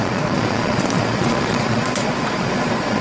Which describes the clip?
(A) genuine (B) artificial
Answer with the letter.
B